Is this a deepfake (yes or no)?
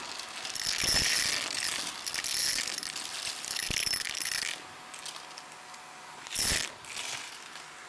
no